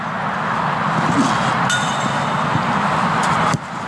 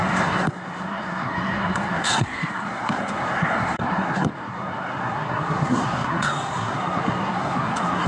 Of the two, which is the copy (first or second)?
second